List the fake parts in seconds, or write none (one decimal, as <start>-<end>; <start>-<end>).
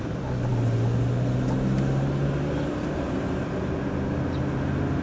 none